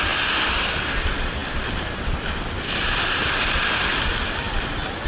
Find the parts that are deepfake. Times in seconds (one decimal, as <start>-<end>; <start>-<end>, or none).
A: none